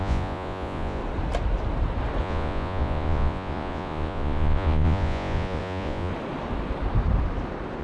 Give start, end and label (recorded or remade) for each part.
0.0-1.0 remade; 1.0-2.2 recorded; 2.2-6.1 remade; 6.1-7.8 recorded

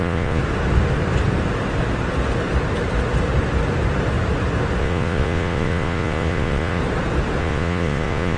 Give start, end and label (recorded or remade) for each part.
0.0-0.4 remade; 0.4-4.8 recorded; 4.8-6.8 remade; 6.8-7.4 recorded; 7.4-8.4 remade

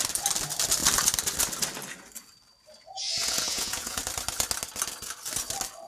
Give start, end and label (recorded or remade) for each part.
0.0-3.2 recorded; 3.2-4.0 remade; 4.0-5.9 recorded